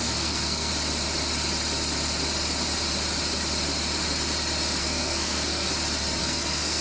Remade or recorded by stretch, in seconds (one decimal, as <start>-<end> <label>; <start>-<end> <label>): 0.0-0.7 remade; 0.7-4.8 recorded; 4.8-5.7 remade; 5.7-6.2 recorded; 6.2-6.8 remade